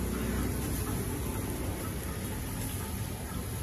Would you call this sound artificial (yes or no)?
no